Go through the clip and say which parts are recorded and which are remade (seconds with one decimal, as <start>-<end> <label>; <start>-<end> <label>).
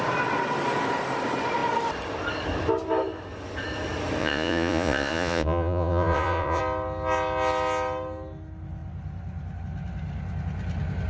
0.0-4.2 recorded; 4.2-6.6 remade; 6.6-11.1 recorded